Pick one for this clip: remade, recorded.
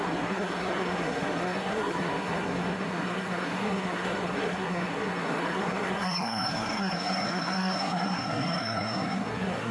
remade